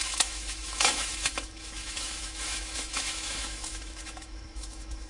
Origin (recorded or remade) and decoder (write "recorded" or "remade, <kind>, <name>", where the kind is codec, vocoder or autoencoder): remade, autoencoder, DAC-VAE